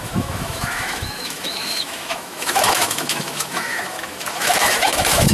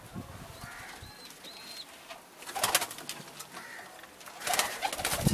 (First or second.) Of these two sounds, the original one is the second